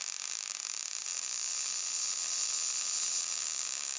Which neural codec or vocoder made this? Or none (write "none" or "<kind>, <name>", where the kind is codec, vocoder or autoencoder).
none